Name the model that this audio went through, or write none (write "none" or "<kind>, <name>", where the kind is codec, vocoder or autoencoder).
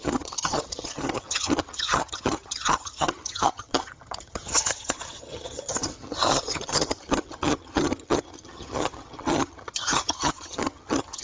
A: vocoder, HiFi-GAN